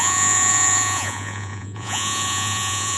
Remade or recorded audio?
remade